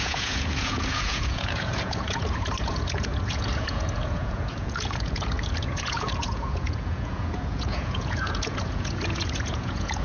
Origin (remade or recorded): remade